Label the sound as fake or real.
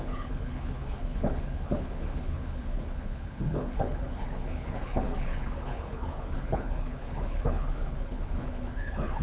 fake